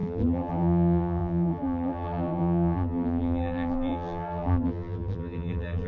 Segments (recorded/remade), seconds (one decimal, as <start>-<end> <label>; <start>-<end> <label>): 0.0-5.9 remade